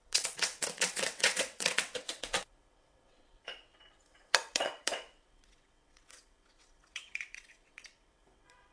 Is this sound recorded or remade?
remade